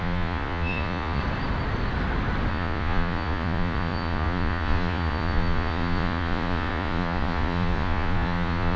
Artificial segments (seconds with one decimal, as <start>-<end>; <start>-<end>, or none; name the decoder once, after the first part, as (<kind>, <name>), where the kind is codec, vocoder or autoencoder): 0.0-1.2 (vocoder, Vocos); 2.5-8.8